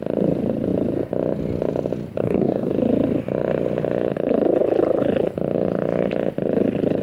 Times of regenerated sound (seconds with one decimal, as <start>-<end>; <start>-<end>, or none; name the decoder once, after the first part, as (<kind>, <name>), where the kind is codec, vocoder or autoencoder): 2.2-2.7 (codec, DAC)